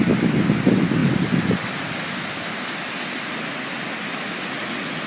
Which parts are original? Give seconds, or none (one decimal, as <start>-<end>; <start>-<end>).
0.0-5.1